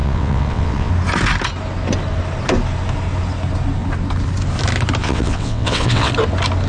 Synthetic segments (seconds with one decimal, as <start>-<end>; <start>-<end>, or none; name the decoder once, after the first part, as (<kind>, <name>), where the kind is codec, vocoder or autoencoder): 0.0-0.9 (vocoder, WaveNeXt); 5.0-6.1